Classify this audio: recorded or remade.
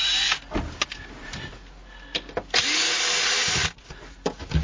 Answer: recorded